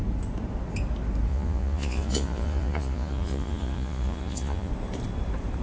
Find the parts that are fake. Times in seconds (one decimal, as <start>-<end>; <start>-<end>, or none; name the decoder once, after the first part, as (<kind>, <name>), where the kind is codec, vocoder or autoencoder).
1.3-4.7 (vocoder, Vocos)